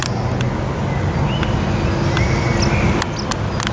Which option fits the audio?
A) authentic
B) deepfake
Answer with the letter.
A